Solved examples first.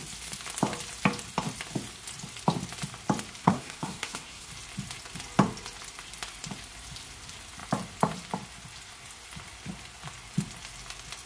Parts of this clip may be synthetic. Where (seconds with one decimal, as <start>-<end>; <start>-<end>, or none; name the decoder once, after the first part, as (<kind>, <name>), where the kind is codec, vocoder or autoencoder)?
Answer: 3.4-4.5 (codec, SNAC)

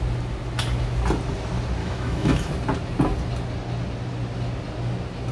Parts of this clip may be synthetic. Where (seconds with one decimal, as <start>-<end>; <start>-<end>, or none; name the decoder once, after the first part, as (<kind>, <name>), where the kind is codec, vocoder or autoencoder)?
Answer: 1.8-2.5 (autoencoder, DAC-VAE)

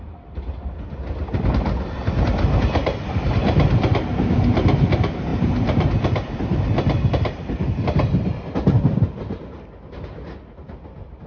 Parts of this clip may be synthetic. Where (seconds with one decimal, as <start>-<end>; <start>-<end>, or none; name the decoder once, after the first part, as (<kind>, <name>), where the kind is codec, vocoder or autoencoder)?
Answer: none